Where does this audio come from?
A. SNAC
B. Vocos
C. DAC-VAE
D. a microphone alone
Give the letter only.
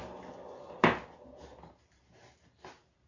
D